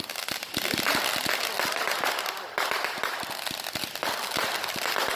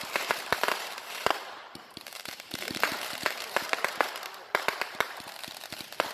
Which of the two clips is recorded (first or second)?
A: first